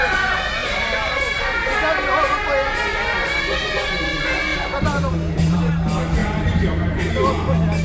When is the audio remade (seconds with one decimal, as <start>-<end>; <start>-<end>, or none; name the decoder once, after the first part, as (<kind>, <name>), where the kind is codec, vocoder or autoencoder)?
0.6-1.4 (vocoder, BigVGAN v2); 4.5-5.7; 6.2-7.0